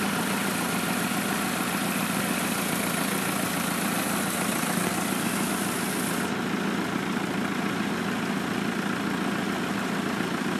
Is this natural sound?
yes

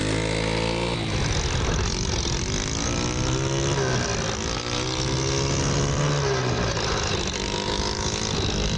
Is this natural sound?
yes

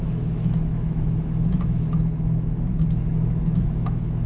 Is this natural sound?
no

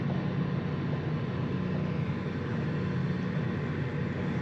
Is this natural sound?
yes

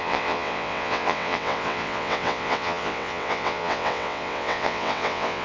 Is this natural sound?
no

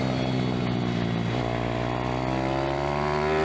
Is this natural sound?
yes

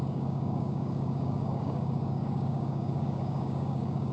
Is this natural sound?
no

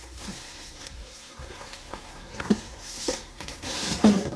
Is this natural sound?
no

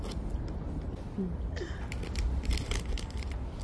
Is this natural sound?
yes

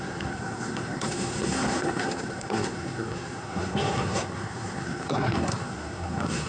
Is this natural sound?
no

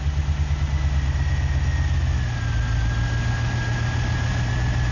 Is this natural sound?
yes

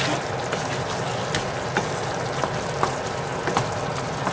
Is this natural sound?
yes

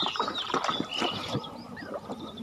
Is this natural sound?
no